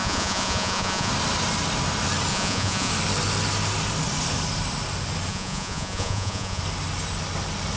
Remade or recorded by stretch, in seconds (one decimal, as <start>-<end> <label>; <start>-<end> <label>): 0.0-1.1 remade; 1.1-2.3 recorded; 2.3-2.9 remade; 2.9-5.3 recorded; 5.3-6.6 remade; 6.6-7.8 recorded